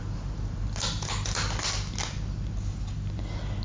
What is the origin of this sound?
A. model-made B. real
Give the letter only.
B